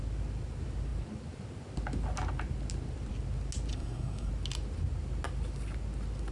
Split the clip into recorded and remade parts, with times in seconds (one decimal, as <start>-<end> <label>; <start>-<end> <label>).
0.0-3.7 recorded; 3.7-4.3 remade; 4.3-6.3 recorded